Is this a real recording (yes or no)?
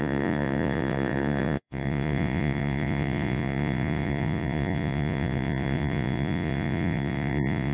no